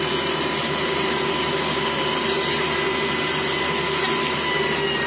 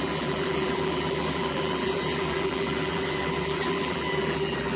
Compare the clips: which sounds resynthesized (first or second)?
second